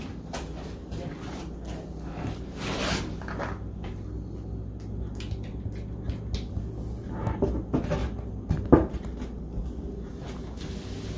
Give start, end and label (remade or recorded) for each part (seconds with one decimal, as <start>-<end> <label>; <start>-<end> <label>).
0.0-11.2 recorded